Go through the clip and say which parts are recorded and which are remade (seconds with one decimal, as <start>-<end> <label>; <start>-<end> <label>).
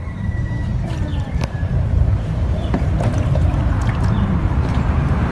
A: 0.0-5.3 remade